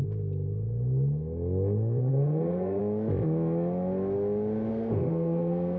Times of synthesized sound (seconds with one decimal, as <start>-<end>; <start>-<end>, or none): 2.1-2.8; 4.7-5.8